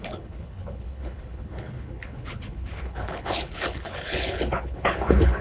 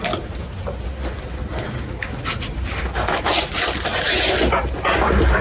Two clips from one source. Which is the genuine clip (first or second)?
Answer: second